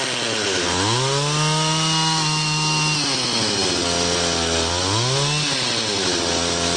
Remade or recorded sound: recorded